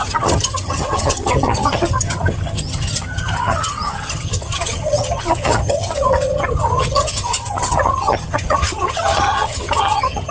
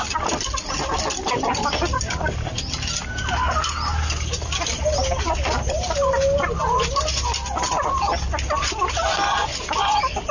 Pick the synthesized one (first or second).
first